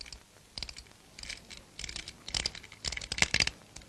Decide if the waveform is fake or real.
real